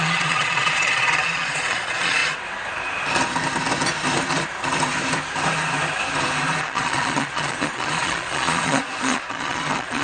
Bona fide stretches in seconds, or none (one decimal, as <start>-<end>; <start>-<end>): 2.2-6.6